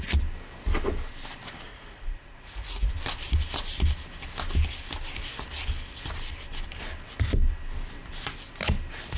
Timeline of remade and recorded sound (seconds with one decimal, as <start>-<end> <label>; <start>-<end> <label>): 0.0-1.7 recorded; 1.7-2.9 remade; 2.9-9.2 recorded